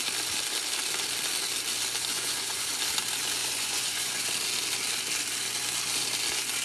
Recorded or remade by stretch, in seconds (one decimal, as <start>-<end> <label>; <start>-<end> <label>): 0.0-2.1 recorded; 2.1-2.7 remade; 2.7-3.4 recorded; 3.4-4.2 remade; 4.2-6.6 recorded